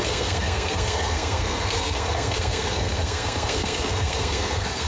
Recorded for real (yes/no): no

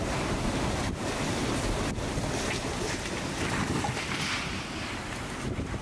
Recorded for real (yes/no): yes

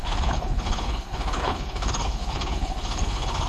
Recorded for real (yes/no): no